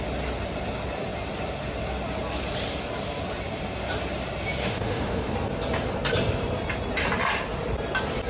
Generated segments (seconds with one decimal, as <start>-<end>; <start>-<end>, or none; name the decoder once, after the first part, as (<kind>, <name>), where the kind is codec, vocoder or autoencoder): 4.6-5.3 (autoencoder, DAC-VAE)